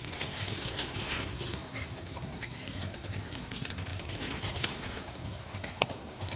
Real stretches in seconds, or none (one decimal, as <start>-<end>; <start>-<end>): none